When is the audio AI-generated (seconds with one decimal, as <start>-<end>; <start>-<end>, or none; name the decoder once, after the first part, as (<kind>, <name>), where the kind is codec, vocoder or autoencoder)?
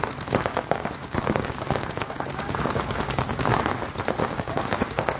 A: 0.5-3.6 (codec, DAC); 4.2-5.2